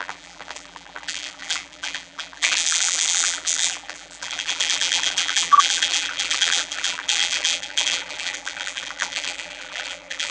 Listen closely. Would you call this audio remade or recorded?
remade